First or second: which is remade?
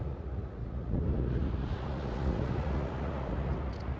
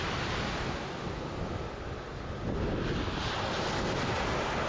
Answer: first